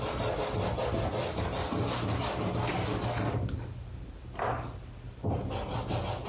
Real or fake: real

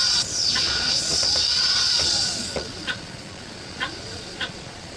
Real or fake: fake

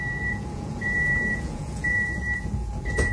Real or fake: fake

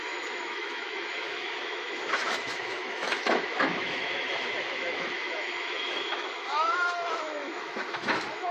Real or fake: fake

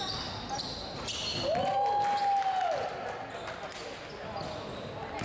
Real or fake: real